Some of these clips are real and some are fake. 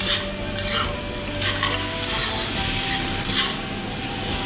real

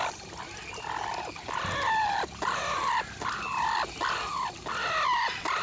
real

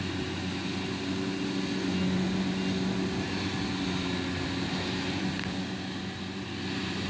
real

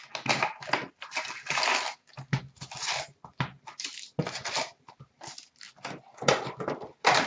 real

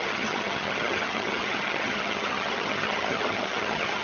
fake